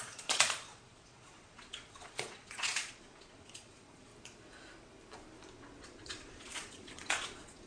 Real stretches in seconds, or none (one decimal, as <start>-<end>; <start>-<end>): 4.1-5.8